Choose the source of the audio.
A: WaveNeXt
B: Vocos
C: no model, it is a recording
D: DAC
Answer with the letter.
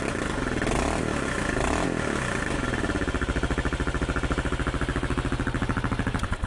C